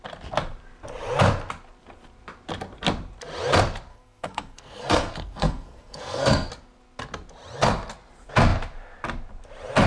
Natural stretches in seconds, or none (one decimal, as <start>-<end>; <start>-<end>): 0.0-3.9; 6.5-9.9